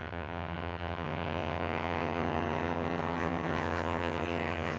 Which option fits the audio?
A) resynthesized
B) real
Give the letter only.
A